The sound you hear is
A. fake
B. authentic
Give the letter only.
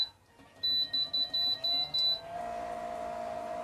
B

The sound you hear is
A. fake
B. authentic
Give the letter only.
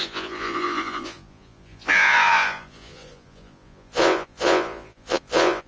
A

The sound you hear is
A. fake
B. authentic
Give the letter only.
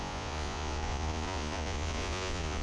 A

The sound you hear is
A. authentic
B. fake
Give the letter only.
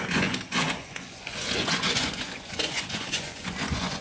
B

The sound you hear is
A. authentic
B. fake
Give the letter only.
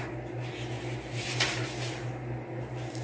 A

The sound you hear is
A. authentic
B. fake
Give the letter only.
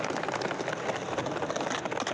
A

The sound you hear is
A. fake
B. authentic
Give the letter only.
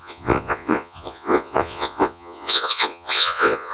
A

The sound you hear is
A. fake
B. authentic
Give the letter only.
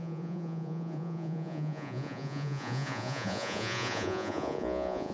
A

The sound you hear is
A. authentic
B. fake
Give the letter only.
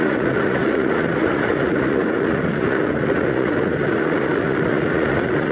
B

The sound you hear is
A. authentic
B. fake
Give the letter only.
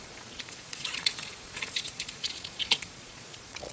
B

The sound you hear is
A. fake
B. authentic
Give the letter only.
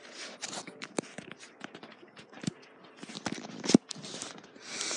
B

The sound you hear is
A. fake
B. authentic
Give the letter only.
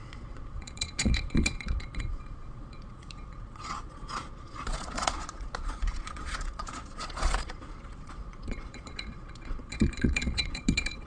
A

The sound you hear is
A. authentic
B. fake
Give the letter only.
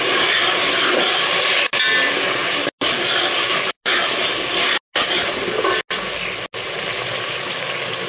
A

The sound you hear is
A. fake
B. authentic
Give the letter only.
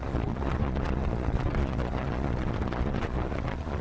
A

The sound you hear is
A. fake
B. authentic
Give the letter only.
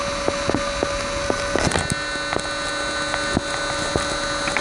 B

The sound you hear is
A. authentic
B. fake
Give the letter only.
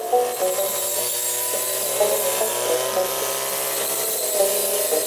A